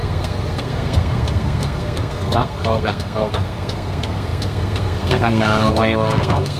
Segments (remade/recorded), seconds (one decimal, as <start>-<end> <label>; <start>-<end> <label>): 0.0-6.6 remade